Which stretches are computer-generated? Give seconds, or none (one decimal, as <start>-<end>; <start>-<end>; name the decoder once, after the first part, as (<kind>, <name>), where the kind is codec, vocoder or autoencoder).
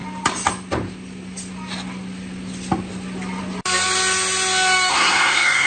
4.9-5.7 (codec, SNAC)